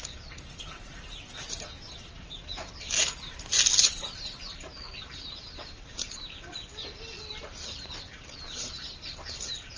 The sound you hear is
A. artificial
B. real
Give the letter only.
B